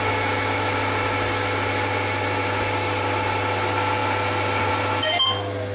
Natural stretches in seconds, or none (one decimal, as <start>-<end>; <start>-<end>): 0.0-5.7